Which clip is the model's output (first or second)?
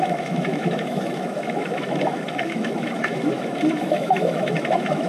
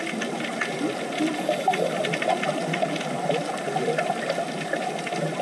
first